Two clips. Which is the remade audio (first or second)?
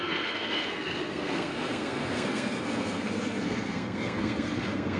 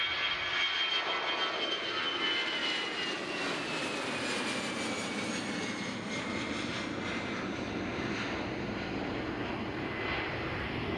first